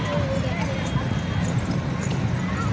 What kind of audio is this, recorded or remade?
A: recorded